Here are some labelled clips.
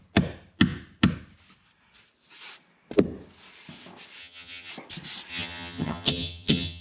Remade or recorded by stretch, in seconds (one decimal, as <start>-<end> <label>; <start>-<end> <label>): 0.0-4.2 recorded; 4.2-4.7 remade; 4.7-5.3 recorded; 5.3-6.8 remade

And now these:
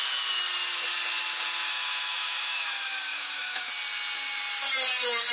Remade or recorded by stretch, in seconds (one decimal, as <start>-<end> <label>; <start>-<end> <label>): 0.0-1.7 recorded; 1.7-3.7 remade; 3.7-5.3 recorded

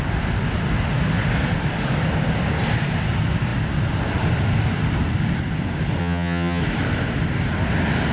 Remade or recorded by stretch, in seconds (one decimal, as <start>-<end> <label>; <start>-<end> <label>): 0.0-6.0 recorded; 6.0-6.6 remade; 6.6-8.1 recorded

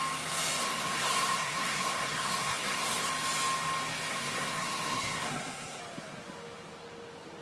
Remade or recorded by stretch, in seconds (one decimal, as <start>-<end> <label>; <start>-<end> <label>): 0.0-0.6 recorded; 0.6-3.1 remade; 3.1-4.1 recorded; 4.1-5.8 remade; 5.8-7.4 recorded

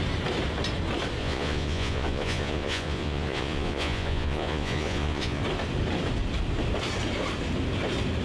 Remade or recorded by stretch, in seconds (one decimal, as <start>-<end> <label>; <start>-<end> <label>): 0.0-1.2 recorded; 1.2-5.4 remade; 5.4-8.2 recorded